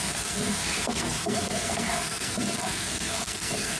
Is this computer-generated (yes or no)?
yes